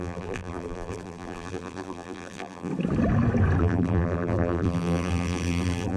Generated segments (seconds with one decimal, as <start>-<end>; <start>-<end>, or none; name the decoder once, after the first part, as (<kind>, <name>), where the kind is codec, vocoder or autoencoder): 0.0-2.7 (vocoder, BigVGAN v2); 3.6-6.0